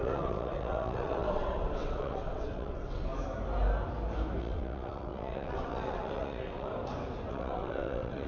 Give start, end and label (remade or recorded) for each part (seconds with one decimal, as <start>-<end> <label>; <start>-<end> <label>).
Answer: 0.0-3.1 remade; 3.1-4.4 recorded; 4.4-6.7 remade; 6.7-7.3 recorded; 7.3-8.3 remade